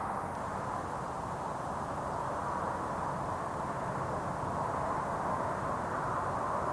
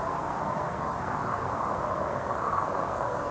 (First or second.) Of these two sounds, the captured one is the first